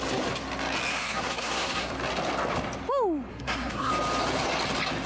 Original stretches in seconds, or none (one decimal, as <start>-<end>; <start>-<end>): 0.0-0.9; 1.9-3.3; 3.9-5.1